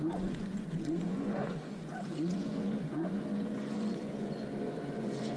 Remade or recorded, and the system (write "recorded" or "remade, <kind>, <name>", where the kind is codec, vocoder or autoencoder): remade, vocoder, Vocos